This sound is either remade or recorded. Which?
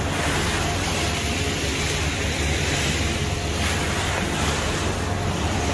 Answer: recorded